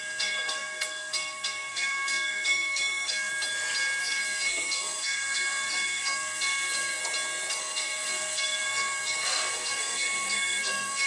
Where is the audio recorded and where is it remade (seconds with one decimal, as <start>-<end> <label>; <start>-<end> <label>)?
0.0-3.3 remade; 3.3-4.0 recorded; 4.0-7.0 remade; 7.0-7.6 recorded; 7.6-11.1 remade